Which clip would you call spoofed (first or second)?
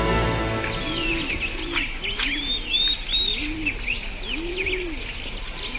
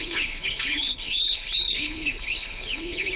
second